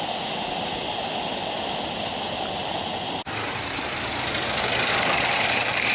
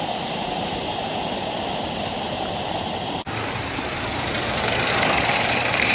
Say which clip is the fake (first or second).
second